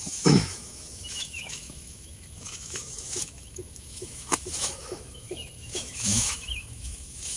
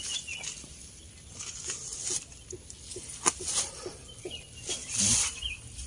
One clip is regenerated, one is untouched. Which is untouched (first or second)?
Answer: second